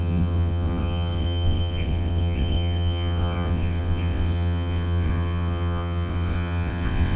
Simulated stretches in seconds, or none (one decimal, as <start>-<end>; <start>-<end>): 0.0-7.2